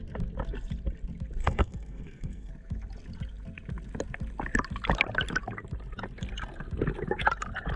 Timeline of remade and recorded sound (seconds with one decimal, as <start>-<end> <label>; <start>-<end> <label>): 0.0-1.4 recorded; 1.4-2.5 remade; 2.5-7.8 recorded